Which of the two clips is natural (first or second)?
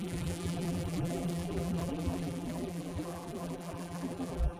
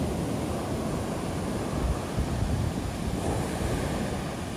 second